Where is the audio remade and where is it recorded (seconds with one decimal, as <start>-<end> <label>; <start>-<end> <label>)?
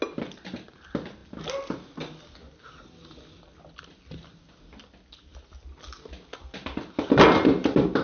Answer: 0.0-8.0 recorded